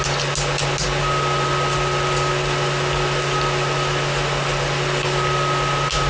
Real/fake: real